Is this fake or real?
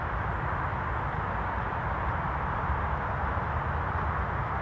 real